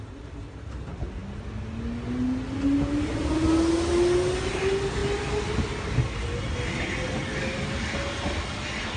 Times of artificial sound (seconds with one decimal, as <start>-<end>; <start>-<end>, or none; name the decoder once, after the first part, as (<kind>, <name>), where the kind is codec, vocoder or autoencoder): none